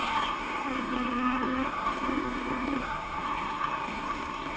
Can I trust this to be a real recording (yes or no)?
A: no